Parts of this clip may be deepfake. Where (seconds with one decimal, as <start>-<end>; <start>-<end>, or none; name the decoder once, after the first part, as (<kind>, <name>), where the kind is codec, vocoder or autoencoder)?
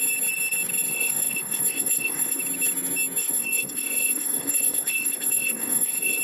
0.9-2.4 (codec, SNAC); 3.2-6.2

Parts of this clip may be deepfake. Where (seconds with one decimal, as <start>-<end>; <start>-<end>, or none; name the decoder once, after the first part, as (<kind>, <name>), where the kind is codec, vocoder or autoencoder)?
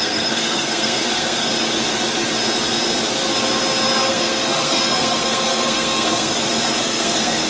0.0-1.5 (codec, SNAC); 4.1-6.3; 6.8-7.5